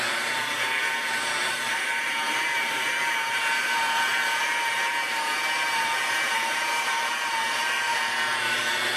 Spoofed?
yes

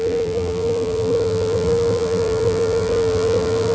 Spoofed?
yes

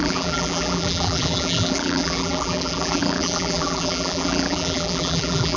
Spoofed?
yes